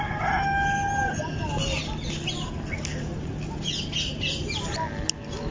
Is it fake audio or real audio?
real